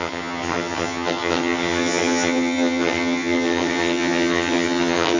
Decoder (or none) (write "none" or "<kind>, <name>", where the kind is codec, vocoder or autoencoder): vocoder, HiFi-GAN